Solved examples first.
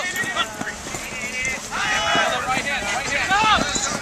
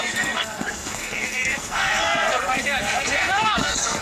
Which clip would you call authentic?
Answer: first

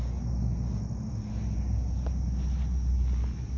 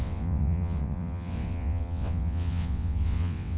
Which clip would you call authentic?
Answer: first